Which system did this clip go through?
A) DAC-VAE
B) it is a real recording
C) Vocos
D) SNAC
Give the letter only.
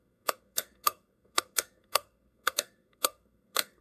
D